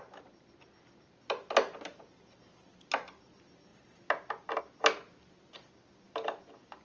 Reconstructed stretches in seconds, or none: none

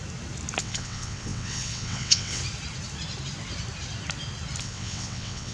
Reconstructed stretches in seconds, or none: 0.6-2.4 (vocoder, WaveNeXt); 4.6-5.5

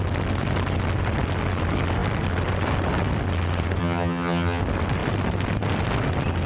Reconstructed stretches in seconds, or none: 3.8-4.6 (vocoder, HiFi-GAN)